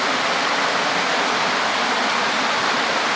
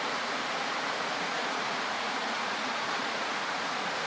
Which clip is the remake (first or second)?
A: second